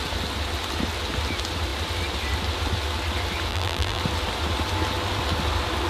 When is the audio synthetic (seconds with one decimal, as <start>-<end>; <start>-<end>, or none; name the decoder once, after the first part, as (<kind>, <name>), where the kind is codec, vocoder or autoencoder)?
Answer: 3.5-4.0 (vocoder, BigVGAN v2)